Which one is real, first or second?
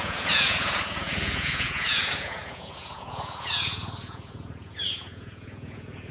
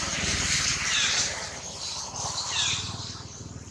second